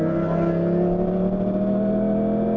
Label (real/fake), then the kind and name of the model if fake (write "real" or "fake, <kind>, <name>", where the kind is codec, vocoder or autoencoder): real